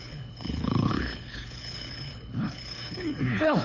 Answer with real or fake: fake